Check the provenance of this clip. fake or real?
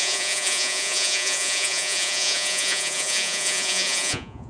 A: fake